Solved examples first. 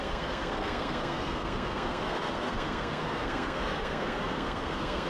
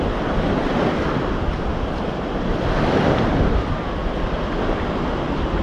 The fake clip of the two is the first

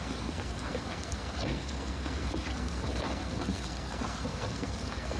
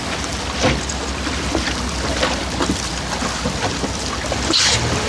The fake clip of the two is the first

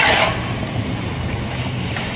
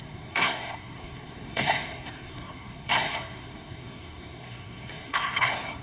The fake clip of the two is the second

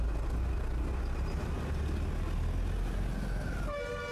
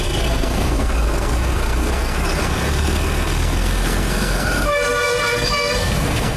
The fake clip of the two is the second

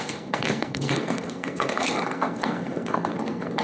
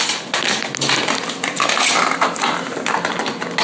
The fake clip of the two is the first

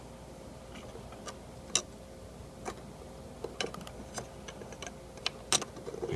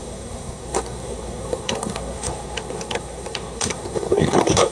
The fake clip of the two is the second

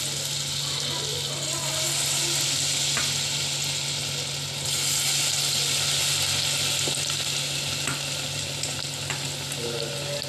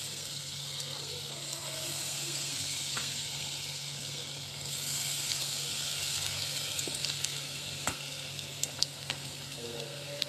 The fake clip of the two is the second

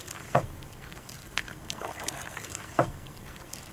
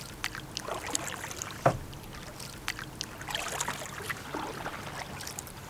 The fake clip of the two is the first